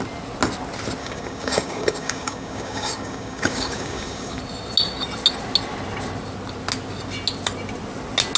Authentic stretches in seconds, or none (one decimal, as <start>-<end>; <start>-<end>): 0.0-1.0; 4.4-8.4